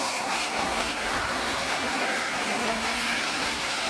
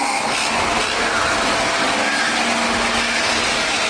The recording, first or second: second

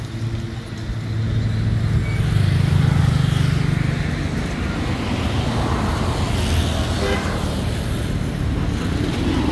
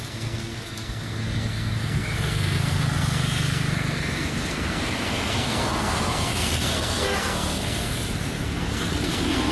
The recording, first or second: first